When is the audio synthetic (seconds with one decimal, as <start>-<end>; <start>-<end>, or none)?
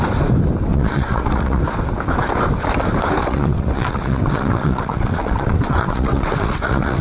0.7-1.6; 3.2-7.0